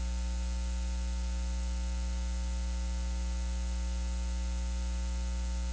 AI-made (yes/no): no